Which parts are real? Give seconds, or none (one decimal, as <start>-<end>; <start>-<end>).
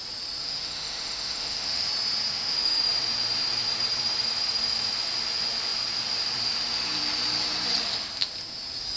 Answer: 0.0-0.4; 1.9-2.3; 2.8-9.0